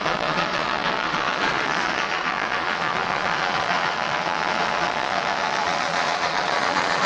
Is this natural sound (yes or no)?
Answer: no